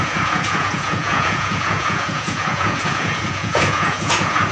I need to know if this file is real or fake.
fake